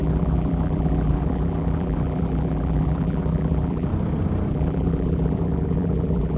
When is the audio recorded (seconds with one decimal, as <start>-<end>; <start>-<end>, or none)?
3.9-4.5